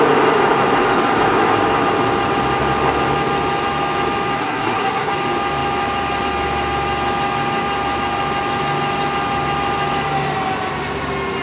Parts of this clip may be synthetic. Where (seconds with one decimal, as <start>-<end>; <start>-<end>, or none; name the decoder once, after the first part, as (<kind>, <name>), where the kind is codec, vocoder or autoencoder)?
4.4-5.1 (codec, SNAC)